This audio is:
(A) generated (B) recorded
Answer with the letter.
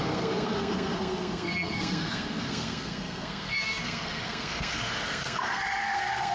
A